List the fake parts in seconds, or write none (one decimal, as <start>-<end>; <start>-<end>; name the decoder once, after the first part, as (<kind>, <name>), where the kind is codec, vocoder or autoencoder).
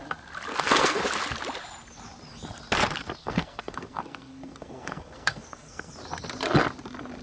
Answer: 0.5-1.0 (codec, SNAC); 3.2-5.9